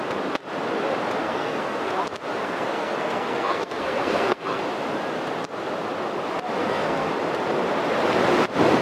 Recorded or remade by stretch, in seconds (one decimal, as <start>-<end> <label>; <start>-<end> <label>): 0.0-1.2 recorded; 1.2-1.9 remade; 1.9-2.4 recorded; 2.4-4.6 remade; 4.6-6.6 recorded; 6.6-7.1 remade; 7.1-8.8 recorded